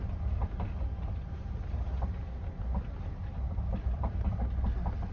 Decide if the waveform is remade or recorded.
recorded